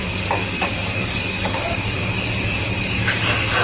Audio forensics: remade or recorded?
remade